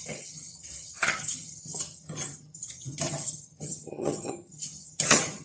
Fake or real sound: fake